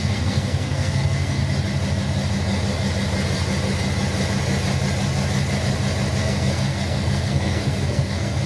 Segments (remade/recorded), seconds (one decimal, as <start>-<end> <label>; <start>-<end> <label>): 0.0-1.4 remade; 1.4-6.2 recorded; 6.2-8.5 remade